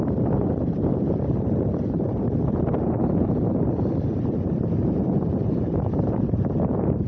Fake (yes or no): yes